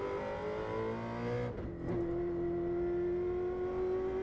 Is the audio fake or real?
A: real